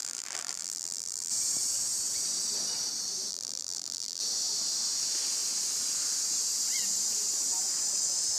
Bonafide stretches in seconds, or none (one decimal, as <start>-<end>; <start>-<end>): 1.3-3.3; 4.2-8.4